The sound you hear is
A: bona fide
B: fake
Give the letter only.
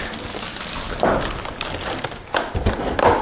A